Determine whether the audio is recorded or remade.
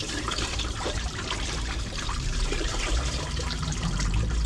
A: remade